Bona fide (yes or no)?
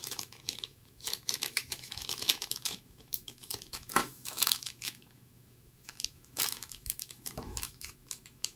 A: no